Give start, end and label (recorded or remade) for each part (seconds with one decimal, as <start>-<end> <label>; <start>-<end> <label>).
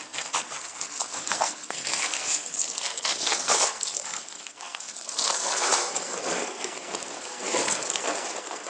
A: 0.0-8.7 remade